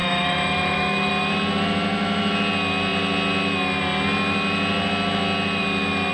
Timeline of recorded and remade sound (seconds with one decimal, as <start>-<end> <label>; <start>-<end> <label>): 0.0-1.1 remade; 1.1-6.1 recorded